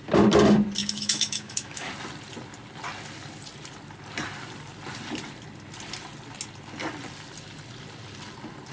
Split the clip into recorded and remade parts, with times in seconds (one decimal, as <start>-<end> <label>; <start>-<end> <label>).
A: 0.0-0.8 recorded; 0.8-1.9 remade; 1.9-8.7 recorded